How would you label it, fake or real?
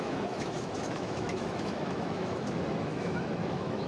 fake